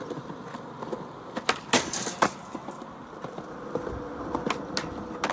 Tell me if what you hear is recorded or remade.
recorded